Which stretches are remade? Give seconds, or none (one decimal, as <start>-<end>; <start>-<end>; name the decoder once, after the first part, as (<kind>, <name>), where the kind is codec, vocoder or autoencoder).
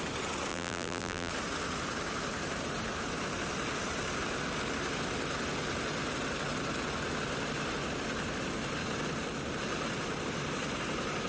0.5-1.3 (vocoder, BigVGAN v2)